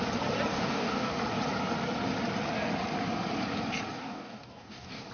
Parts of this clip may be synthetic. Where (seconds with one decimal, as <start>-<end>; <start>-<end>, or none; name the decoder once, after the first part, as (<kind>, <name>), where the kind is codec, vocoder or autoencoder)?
0.5-1.1 (codec, DAC); 4.0-5.1